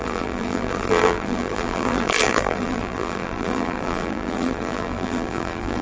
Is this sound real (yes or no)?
no